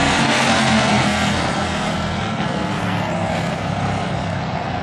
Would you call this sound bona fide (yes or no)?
no